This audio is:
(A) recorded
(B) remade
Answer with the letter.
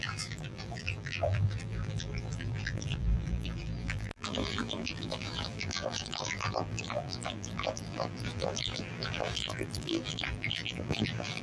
B